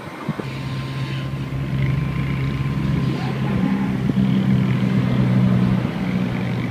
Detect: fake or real real